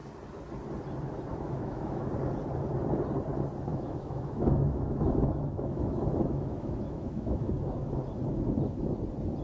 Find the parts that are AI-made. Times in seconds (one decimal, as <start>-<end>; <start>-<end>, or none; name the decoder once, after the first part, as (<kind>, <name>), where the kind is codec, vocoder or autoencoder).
1.3-2.1 (autoencoder, DAC-VAE); 3.7-7.5